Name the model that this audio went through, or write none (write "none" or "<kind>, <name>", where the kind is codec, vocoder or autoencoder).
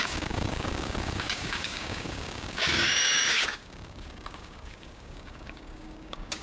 codec, DAC